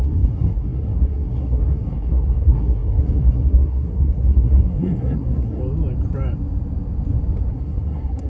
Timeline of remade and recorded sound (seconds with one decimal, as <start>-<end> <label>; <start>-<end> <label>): 0.0-5.6 remade; 5.6-7.5 recorded; 7.5-8.3 remade